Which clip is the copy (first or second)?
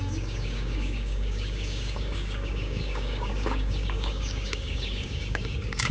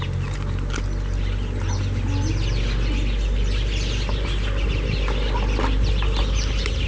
first